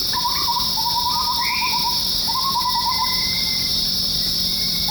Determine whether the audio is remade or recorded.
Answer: remade